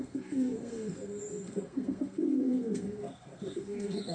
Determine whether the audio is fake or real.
fake